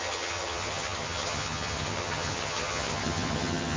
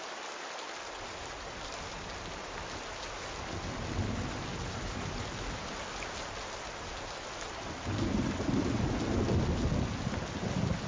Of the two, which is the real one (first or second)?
second